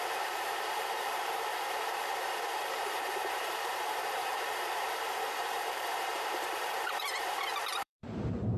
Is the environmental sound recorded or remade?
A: remade